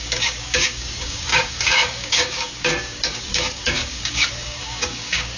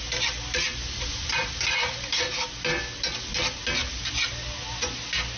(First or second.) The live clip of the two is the second